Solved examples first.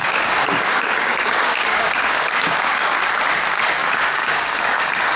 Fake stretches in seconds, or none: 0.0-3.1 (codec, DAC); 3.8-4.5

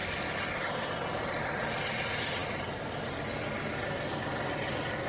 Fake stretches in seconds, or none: none

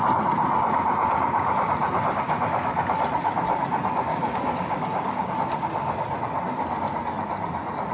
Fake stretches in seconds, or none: 4.1-5.3 (codec, DAC)

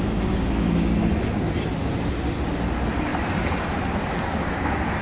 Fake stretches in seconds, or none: 0.0-1.0 (codec, DAC); 4.0-5.0